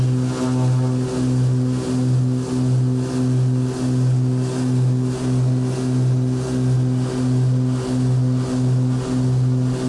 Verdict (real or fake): real